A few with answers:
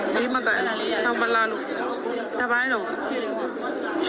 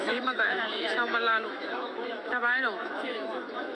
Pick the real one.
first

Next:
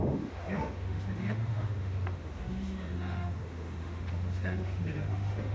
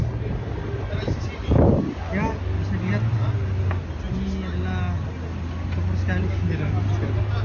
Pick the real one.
second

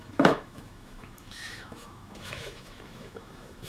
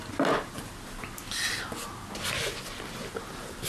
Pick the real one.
second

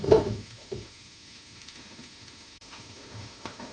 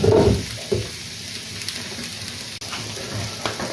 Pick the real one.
second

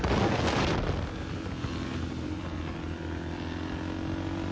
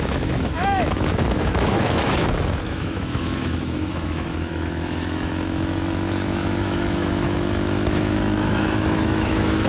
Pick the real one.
first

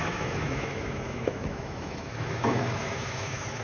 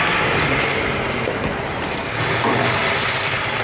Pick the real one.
second